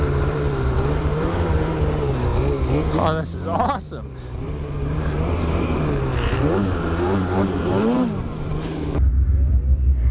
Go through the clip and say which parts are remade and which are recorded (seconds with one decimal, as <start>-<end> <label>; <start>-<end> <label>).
0.0-2.3 remade; 2.3-4.2 recorded; 4.2-8.5 remade; 8.5-9.1 recorded; 9.1-10.1 remade